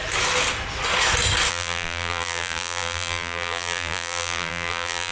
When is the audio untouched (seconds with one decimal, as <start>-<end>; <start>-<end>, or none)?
0.0-1.5